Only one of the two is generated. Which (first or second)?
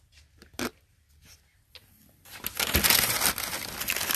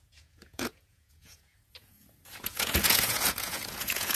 second